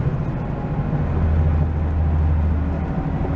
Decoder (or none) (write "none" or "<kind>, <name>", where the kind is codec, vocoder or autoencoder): none